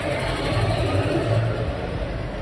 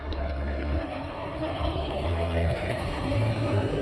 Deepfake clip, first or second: second